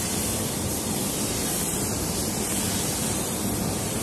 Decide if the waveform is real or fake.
real